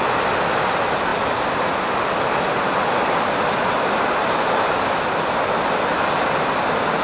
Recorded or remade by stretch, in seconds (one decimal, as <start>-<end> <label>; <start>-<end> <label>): 0.0-7.0 recorded